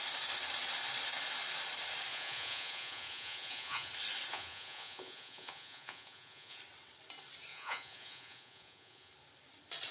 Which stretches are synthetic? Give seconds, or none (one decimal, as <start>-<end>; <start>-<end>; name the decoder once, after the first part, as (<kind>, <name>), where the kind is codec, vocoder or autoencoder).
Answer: 2.1-3.9 (vocoder, Vocos); 4.3-6.6; 7.5-9.1